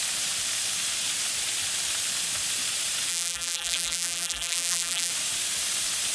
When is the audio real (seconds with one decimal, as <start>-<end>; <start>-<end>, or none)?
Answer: 0.0-3.1; 5.1-6.1